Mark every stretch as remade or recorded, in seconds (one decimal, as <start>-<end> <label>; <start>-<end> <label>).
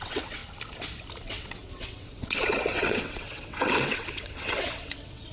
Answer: 0.0-0.4 remade; 0.4-1.2 recorded; 1.2-5.3 remade